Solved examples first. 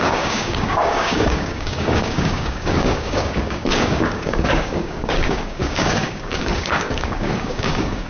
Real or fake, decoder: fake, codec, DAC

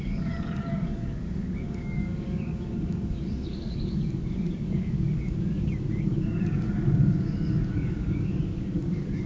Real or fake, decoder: fake, codec, DAC